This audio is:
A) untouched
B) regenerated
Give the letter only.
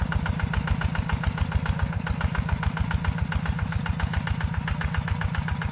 A